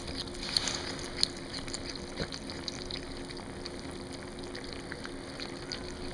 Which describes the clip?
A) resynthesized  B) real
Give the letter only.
B